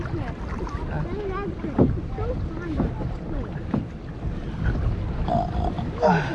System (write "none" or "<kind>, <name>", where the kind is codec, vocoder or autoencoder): none